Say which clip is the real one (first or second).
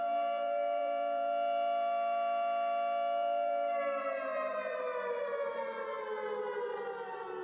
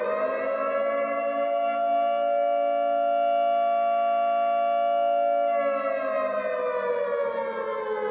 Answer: second